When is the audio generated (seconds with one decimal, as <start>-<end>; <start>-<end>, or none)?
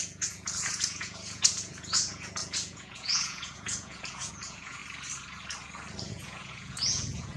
0.0-4.8; 6.1-7.4